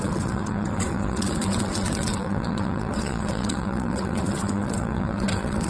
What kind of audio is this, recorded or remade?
remade